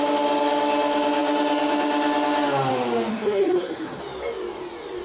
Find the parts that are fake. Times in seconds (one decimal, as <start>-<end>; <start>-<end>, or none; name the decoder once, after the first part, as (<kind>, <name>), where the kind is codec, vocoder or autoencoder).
3.1-4.0 (codec, SNAC)